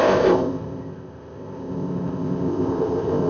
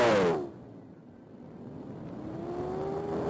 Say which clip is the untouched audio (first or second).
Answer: second